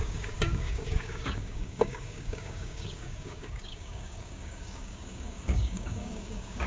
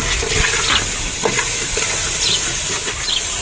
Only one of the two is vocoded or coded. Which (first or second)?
first